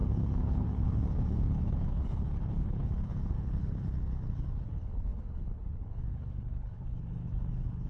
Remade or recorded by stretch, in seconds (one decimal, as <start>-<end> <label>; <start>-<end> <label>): 0.0-7.9 remade